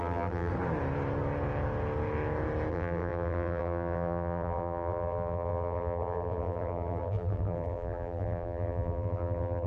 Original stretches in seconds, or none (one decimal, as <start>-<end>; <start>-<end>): 0.5-2.7